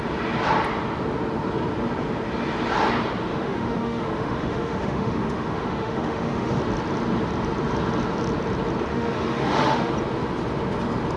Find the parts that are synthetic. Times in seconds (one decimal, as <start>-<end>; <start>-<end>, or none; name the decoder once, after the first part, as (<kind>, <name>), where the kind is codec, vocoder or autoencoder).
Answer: 3.3-6.6 (autoencoder, DAC-VAE); 8.9-9.9